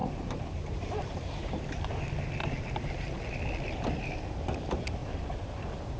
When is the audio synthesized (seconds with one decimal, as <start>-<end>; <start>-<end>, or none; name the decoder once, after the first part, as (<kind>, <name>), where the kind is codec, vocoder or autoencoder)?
0.0-1.6 (vocoder, BigVGAN v2); 2.4-3.3; 5.0-6.0